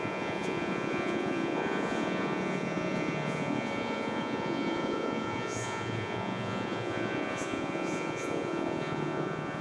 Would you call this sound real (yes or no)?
no